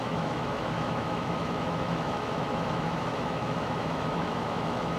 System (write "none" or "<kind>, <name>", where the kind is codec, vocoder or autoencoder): autoencoder, DAC-VAE